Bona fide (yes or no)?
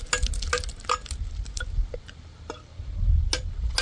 yes